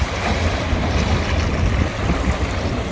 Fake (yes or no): no